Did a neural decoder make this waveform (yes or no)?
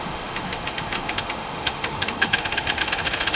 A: yes